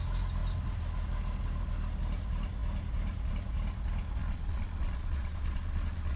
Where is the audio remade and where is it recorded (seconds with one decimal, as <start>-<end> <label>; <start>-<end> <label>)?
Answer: 0.0-4.2 recorded; 4.2-6.2 remade